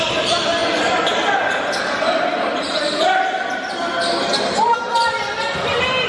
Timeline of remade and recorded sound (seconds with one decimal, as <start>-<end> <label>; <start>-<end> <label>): 0.0-0.6 remade; 0.6-4.2 recorded; 4.2-6.1 remade